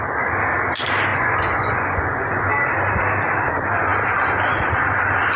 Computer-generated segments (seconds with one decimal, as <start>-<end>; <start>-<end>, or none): 1.1-2.4